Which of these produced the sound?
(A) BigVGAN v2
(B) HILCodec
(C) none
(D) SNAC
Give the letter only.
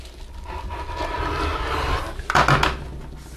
C